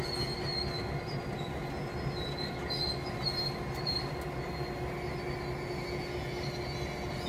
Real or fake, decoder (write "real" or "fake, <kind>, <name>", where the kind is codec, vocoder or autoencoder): real